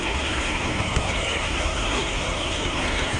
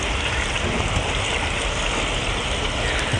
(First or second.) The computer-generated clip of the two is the first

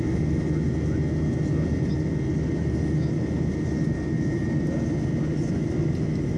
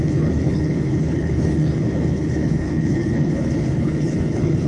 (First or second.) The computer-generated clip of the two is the second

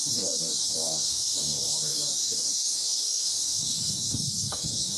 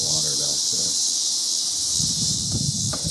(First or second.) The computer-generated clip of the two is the first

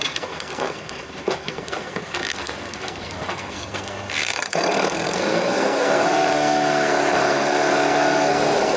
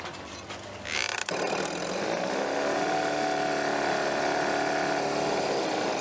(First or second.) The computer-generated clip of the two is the first